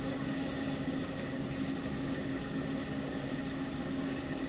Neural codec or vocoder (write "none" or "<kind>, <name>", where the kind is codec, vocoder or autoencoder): codec, DAC